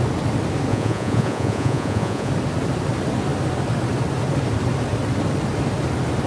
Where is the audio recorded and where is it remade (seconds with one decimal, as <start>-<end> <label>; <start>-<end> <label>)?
0.0-0.7 recorded; 0.7-2.3 remade; 2.3-6.3 recorded